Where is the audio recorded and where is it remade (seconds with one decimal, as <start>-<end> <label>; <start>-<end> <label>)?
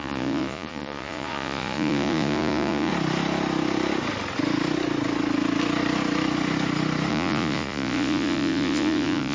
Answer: 0.0-2.9 remade; 2.9-7.1 recorded; 7.1-9.3 remade